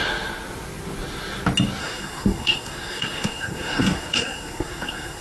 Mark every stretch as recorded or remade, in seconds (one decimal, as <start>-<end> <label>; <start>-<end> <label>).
0.0-1.8 recorded; 1.8-5.2 remade